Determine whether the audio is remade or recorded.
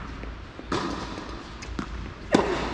recorded